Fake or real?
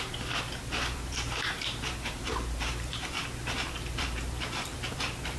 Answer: fake